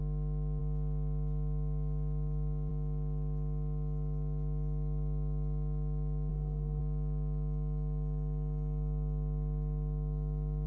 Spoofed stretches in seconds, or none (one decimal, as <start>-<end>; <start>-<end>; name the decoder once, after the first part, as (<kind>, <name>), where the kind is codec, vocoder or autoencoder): 6.3-6.8 (codec, SNAC)